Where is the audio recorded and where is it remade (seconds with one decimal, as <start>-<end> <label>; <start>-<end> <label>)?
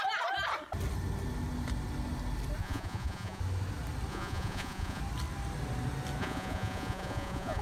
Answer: 0.0-2.6 recorded; 2.6-3.4 remade; 3.4-4.1 recorded; 4.1-5.0 remade; 5.0-6.2 recorded; 6.2-7.6 remade